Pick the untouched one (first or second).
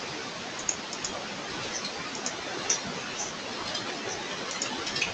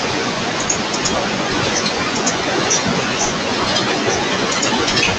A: first